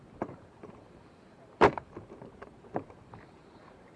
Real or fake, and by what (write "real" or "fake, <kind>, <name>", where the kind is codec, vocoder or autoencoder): fake, vocoder, BigVGAN v2